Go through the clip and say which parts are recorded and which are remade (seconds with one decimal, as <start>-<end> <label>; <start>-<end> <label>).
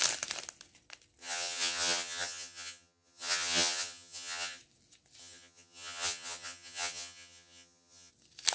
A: 0.0-1.2 recorded; 1.2-4.6 remade; 4.6-5.2 recorded; 5.2-8.1 remade; 8.1-8.5 recorded